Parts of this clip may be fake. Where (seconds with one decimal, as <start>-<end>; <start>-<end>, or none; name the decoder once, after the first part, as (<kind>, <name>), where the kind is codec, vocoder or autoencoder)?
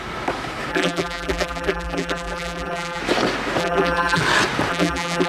0.7-3.0 (vocoder, BigVGAN v2); 3.6-4.2; 4.7-5.3